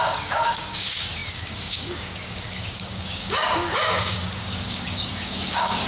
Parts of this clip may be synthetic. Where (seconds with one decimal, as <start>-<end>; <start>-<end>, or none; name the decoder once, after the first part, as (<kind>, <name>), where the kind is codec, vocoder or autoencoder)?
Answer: 0.0-5.9 (codec, DAC)